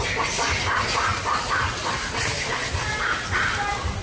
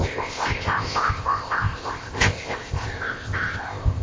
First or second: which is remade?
second